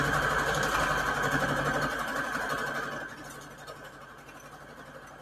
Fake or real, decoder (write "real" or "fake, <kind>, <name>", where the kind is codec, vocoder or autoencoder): real